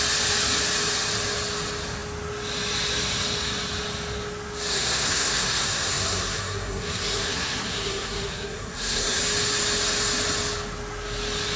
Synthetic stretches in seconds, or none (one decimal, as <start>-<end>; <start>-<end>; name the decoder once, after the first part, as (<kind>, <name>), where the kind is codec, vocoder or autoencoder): 4.7-9.2 (codec, SNAC)